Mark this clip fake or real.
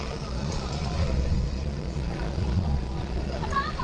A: fake